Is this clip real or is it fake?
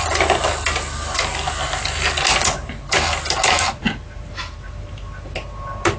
real